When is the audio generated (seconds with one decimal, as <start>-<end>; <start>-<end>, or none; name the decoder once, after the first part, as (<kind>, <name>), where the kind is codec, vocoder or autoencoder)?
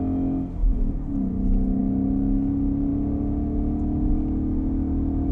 none